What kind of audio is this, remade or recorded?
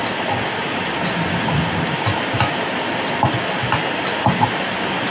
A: recorded